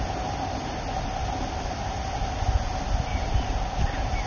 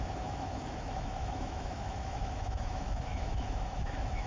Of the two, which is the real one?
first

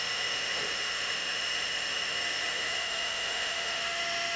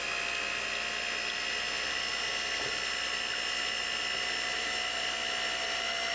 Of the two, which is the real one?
second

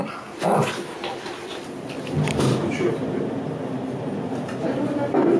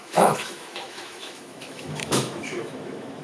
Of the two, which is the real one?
first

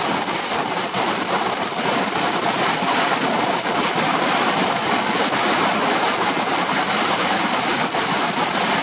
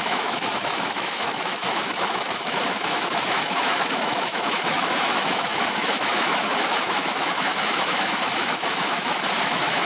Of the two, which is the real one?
first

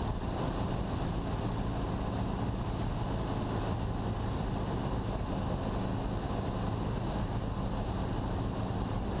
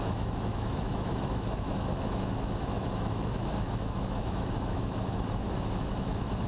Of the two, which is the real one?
first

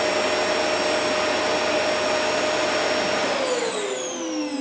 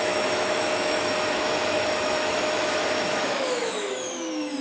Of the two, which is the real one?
first